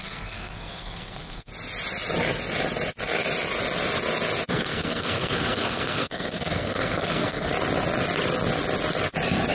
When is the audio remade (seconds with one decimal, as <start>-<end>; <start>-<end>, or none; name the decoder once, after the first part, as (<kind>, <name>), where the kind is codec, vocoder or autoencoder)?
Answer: 0.0-1.5 (codec, SNAC); 4.5-7.5